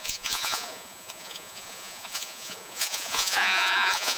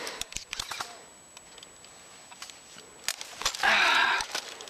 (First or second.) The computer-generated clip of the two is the first